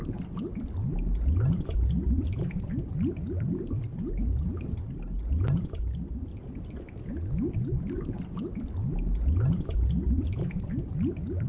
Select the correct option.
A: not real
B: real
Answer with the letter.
B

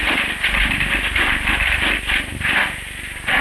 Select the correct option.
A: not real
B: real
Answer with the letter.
B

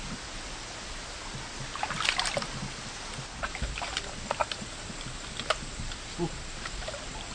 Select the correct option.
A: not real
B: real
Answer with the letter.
B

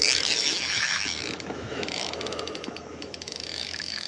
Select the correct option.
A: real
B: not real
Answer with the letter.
B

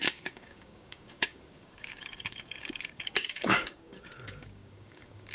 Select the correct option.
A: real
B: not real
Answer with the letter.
B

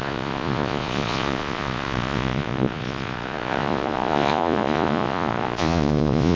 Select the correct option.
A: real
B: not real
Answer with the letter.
B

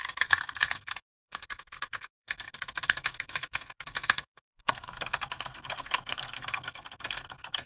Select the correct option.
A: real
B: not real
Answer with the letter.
B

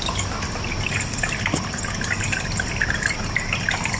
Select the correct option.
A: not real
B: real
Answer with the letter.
B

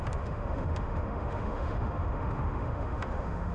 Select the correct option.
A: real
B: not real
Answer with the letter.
B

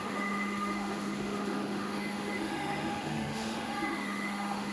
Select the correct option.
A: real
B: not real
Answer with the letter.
B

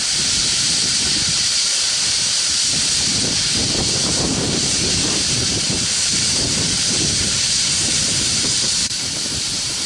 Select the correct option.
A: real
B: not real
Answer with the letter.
B